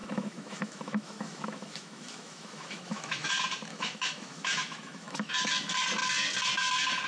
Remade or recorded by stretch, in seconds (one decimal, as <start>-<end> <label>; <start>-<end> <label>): 0.0-3.3 remade; 3.3-3.7 recorded; 3.7-5.5 remade; 5.5-7.1 recorded